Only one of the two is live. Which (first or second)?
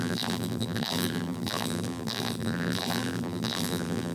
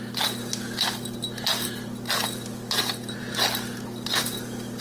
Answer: second